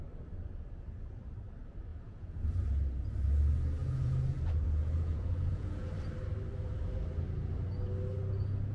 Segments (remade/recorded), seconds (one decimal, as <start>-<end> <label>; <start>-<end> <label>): 0.0-1.9 recorded; 1.9-2.5 remade; 2.5-3.8 recorded; 3.8-5.9 remade; 5.9-8.7 recorded